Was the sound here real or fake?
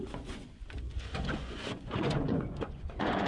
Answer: fake